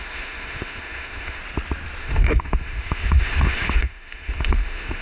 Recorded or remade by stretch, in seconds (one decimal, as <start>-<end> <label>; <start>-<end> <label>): 0.0-1.4 remade; 1.4-2.0 recorded; 2.0-5.0 remade